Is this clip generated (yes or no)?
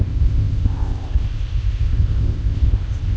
yes